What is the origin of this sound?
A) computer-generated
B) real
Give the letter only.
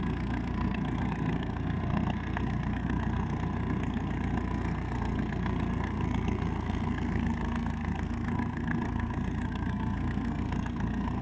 A